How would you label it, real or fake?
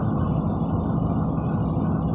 real